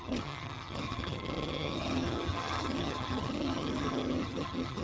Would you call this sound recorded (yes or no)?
no